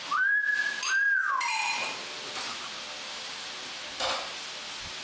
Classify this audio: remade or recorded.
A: recorded